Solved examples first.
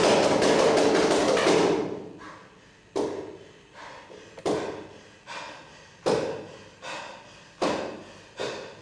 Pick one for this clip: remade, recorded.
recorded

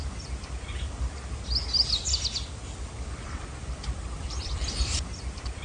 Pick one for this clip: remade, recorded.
remade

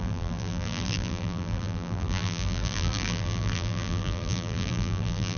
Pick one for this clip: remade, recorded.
remade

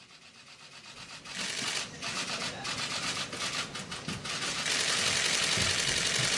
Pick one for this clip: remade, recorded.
remade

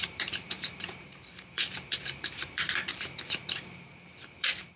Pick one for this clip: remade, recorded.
remade